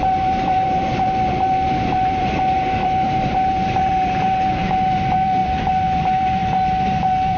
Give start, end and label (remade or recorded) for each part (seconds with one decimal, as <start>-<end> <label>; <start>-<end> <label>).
0.0-6.4 remade; 6.4-7.0 recorded; 7.0-7.4 remade